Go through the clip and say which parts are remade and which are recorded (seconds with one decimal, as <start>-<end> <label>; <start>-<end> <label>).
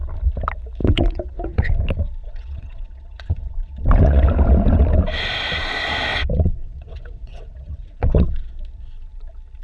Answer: 0.0-0.8 recorded; 0.8-1.7 remade; 1.7-2.2 recorded; 2.2-4.2 remade; 4.2-6.1 recorded; 6.1-8.5 remade; 8.5-9.6 recorded